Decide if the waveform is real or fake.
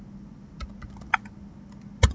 real